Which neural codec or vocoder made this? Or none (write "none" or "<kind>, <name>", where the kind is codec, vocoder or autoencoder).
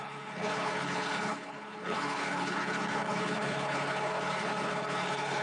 codec, HILCodec